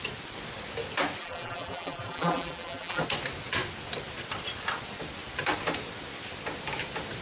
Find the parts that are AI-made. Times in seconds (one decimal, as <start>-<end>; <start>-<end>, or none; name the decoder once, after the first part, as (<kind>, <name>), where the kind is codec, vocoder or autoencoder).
1.2-3.0 (vocoder, BigVGAN v2)